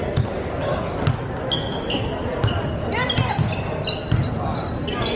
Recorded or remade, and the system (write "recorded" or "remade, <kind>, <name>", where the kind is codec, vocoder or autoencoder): recorded